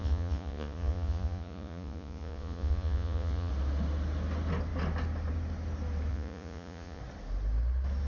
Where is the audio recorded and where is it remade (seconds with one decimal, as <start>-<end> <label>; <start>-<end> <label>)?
0.0-3.5 remade; 3.5-6.1 recorded; 6.1-7.0 remade; 7.0-8.1 recorded